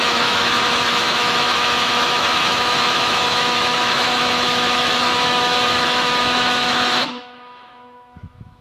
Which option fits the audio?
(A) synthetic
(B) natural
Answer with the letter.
A